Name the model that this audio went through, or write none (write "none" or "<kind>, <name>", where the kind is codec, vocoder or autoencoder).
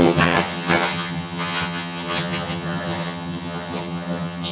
vocoder, HiFi-GAN